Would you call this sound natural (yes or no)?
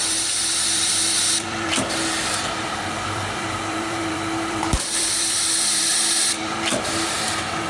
no